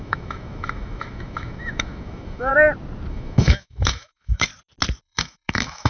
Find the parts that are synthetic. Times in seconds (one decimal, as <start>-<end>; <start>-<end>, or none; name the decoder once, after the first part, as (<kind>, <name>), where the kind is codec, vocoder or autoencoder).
0.0-2.5 (autoencoder, DAC-VAE); 3.1-4.5; 5.0-5.9